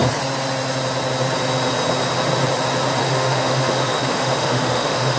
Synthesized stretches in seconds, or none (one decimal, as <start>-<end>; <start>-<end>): 3.0-5.2